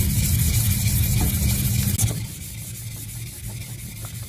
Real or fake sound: real